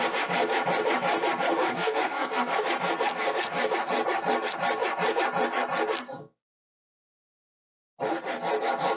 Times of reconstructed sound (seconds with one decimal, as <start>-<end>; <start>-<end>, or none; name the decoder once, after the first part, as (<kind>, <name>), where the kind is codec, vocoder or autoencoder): 1.6-2.6 (codec, SNAC)